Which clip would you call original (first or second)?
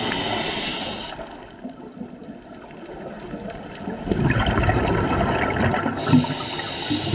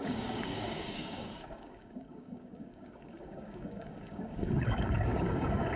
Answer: first